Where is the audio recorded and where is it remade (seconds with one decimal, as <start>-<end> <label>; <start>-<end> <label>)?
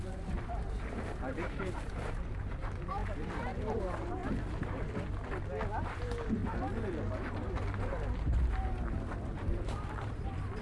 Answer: 0.0-4.2 remade; 4.2-5.7 recorded; 5.7-6.4 remade; 6.4-8.5 recorded; 8.5-10.6 remade